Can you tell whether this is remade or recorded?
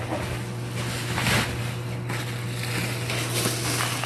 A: recorded